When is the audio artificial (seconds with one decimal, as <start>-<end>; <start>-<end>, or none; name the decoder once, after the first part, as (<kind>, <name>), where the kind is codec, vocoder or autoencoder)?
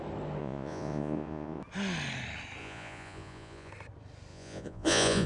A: 0.4-1.6 (vocoder, Vocos); 2.6-3.7; 4.3-5.3